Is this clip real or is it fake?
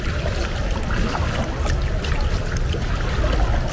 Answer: real